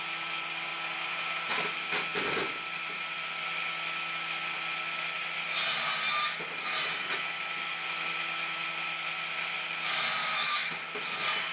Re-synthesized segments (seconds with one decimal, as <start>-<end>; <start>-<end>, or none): 10.2-10.8